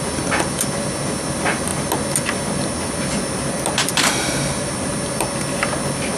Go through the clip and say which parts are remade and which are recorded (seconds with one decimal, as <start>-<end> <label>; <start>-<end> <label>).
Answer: 0.0-3.8 recorded; 3.8-4.3 remade; 4.3-6.2 recorded